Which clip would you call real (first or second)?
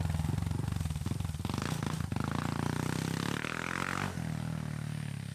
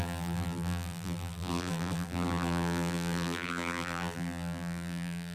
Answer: first